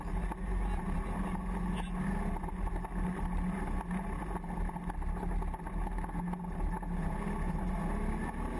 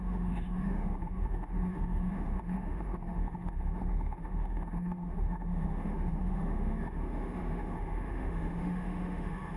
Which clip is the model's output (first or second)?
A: second